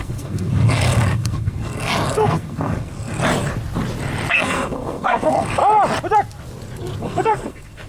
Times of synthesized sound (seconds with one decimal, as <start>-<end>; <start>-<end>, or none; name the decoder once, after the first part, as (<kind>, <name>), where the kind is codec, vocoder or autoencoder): 0.0-3.2 (codec, SNAC); 4.3-5.6; 7.0-7.9